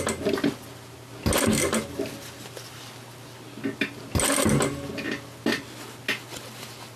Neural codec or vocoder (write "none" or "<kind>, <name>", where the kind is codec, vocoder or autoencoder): none